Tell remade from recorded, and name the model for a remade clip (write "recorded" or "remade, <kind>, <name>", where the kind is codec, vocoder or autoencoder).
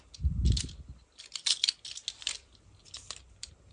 recorded